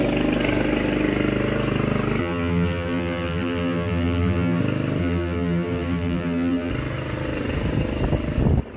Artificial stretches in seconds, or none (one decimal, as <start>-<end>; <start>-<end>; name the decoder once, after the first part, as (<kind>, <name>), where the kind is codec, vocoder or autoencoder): 2.2-4.6 (vocoder, BigVGAN v2); 5.0-6.7